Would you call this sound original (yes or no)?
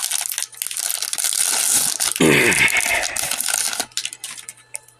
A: yes